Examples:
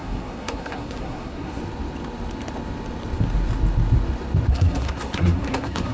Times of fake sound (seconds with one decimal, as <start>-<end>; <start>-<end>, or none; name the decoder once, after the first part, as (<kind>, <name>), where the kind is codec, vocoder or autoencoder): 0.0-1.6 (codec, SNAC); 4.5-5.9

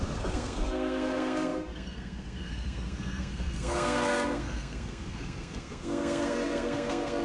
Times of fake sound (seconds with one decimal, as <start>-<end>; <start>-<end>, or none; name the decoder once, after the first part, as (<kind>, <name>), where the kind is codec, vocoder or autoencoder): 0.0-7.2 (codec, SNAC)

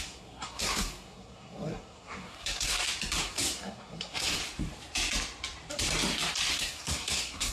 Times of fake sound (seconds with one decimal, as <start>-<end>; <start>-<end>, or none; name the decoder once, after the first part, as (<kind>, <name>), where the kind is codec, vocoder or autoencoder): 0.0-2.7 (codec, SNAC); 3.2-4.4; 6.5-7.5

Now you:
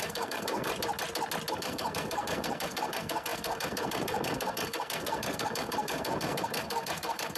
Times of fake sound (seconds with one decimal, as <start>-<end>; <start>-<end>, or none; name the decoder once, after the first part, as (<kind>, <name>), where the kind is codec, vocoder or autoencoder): 0.0-0.7 (codec, SNAC); 1.5-7.4